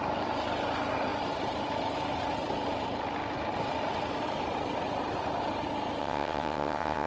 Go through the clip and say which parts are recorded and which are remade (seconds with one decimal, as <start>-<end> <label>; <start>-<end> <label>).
0.0-6.0 recorded; 6.0-7.1 remade